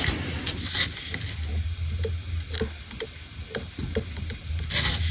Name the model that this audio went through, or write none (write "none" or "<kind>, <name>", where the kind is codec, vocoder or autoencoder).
none